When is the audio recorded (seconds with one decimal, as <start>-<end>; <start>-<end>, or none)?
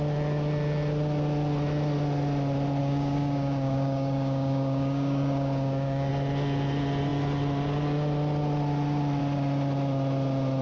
0.0-2.8; 6.1-10.6